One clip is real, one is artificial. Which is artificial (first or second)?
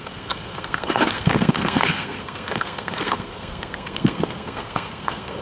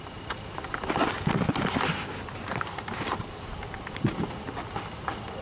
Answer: first